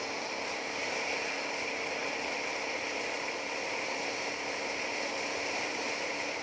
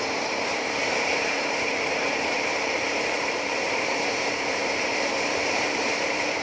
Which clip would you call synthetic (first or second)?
second